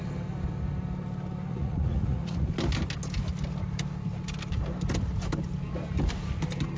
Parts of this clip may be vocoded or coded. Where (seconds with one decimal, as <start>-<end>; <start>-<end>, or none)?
1.5-2.5